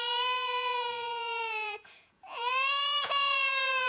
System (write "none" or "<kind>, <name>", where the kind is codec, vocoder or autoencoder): vocoder, Vocos